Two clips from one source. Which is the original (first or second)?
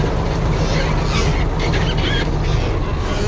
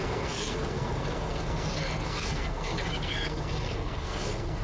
first